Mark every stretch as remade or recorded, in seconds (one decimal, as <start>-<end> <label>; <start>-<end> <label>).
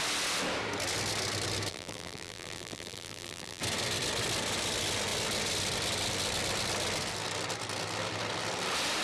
0.0-1.7 recorded; 1.7-3.6 remade; 3.6-9.0 recorded